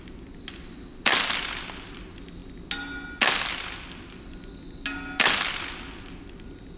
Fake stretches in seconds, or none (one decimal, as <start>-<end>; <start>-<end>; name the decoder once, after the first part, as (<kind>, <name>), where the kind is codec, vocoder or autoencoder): none